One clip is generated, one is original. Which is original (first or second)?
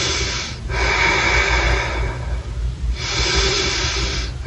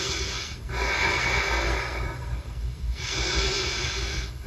first